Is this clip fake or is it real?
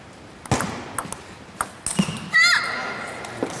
real